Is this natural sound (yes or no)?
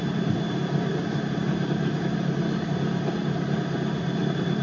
yes